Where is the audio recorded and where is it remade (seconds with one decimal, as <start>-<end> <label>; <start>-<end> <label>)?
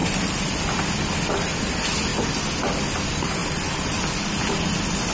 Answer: 0.0-5.1 recorded